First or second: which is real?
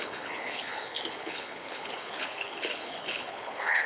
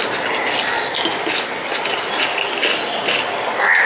second